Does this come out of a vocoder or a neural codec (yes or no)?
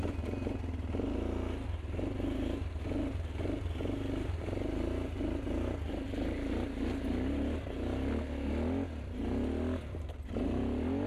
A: no